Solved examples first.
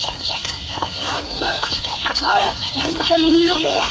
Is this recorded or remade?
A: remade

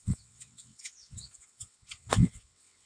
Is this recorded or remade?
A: remade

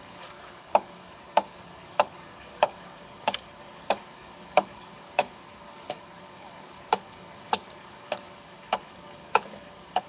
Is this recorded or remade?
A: remade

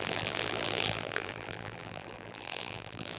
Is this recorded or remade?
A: remade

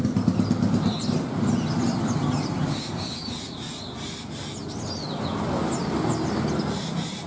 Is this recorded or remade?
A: recorded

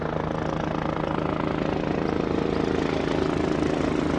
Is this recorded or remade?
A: recorded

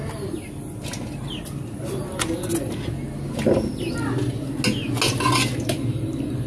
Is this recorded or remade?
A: recorded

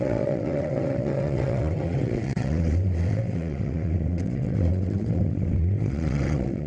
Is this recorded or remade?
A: remade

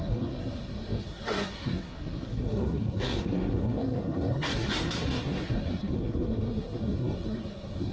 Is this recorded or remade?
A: remade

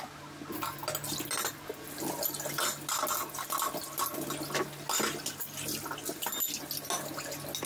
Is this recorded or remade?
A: recorded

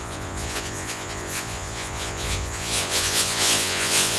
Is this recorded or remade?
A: remade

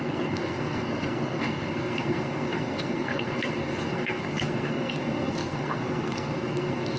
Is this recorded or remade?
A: remade